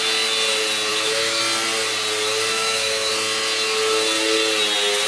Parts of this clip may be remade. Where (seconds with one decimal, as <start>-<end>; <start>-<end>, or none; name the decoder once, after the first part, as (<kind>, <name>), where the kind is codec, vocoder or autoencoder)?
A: 0.9-1.4 (autoencoder, DAC-VAE); 2.5-3.1